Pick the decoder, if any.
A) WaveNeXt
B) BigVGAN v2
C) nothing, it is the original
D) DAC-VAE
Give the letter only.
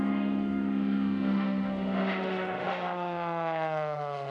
D